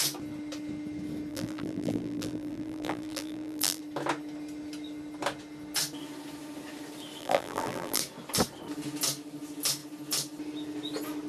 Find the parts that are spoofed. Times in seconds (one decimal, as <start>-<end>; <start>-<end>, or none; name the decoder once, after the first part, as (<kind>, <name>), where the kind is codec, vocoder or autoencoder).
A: 1.3-3.8 (vocoder, BigVGAN v2); 7.2-8.0